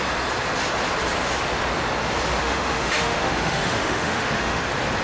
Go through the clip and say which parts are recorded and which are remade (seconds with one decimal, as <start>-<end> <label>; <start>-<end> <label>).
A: 0.0-2.4 recorded; 2.4-4.6 remade; 4.6-5.0 recorded